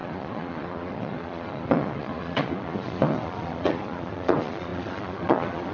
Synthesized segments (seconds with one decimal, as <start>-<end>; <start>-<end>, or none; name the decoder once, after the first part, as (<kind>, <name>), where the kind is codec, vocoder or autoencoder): 0.0-5.7 (vocoder, Vocos)